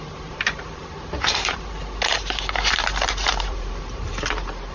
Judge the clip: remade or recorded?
remade